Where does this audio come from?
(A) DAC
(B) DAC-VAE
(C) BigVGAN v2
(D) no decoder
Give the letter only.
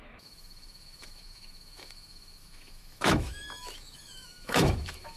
B